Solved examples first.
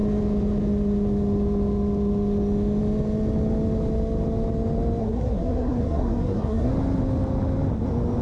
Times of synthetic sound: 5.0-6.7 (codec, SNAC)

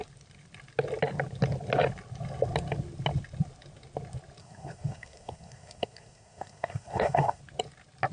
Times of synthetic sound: 4.4-7.4 (codec, SNAC)